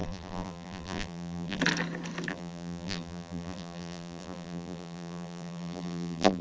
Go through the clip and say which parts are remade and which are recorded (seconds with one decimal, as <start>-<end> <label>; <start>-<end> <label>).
0.0-1.6 remade; 1.6-2.3 recorded; 2.3-6.4 remade